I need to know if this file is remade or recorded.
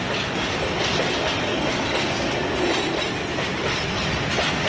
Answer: recorded